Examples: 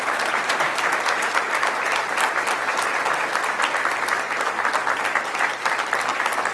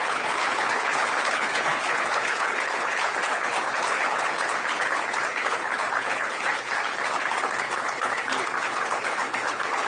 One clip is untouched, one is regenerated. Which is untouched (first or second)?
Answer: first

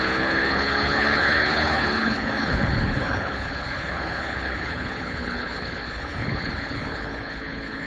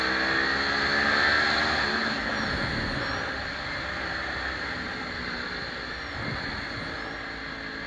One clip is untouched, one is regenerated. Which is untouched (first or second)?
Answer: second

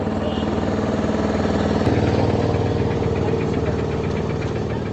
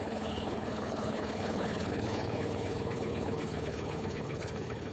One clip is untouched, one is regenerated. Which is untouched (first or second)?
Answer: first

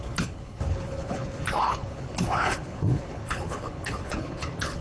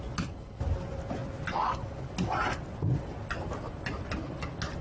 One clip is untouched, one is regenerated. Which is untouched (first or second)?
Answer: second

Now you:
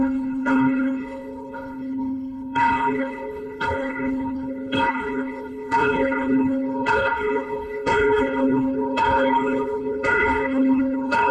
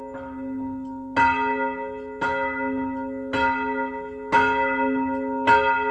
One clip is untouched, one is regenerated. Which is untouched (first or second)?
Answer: second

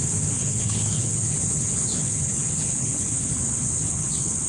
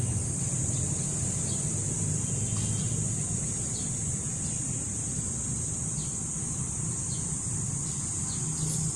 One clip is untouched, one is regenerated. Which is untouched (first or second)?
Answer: second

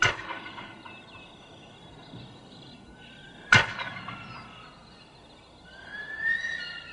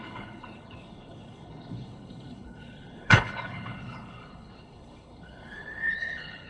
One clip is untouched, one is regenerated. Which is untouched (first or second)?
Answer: first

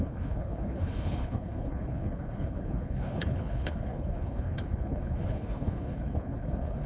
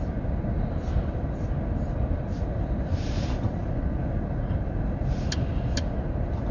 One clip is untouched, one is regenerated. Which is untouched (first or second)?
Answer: second